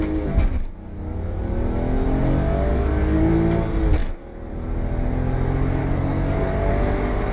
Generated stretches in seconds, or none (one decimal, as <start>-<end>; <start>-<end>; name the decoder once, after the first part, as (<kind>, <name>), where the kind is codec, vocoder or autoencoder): 2.7-3.3 (codec, DAC); 5.8-6.7